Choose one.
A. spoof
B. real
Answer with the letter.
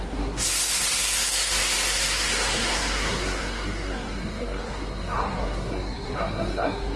A